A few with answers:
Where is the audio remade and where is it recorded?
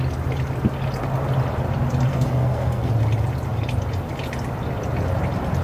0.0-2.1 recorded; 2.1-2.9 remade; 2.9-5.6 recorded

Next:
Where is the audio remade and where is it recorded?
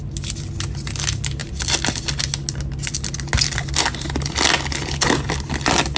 0.0-6.0 recorded